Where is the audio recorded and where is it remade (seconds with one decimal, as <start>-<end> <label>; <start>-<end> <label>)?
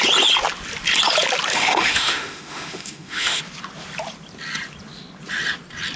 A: 0.0-1.5 recorded; 1.5-3.4 remade; 3.4-6.0 recorded